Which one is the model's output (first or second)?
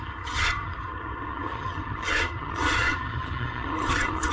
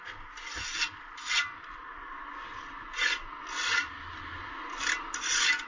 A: first